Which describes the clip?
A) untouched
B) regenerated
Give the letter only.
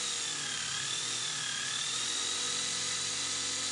B